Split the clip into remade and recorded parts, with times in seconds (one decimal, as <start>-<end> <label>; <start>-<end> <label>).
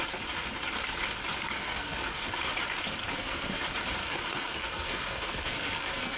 0.0-1.4 recorded; 1.4-2.4 remade; 2.4-3.0 recorded; 3.0-3.6 remade; 3.6-4.0 recorded; 4.0-6.2 remade